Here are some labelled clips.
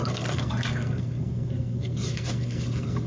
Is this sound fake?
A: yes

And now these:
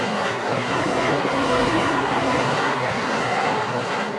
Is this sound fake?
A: yes